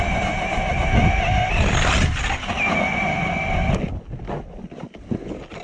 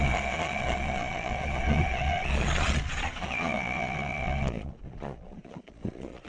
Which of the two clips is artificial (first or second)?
second